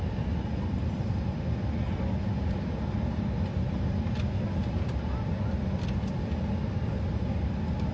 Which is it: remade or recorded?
recorded